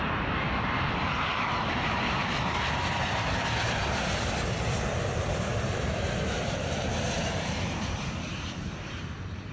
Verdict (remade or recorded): remade